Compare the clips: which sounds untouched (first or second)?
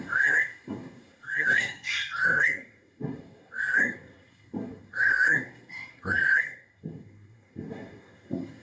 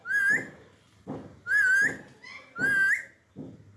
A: second